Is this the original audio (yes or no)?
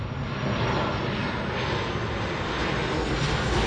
yes